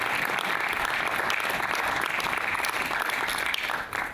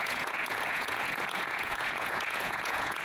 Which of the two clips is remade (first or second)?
second